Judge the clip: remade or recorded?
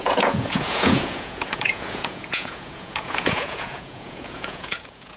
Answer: remade